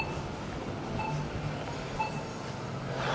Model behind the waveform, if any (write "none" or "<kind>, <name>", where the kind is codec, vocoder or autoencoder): none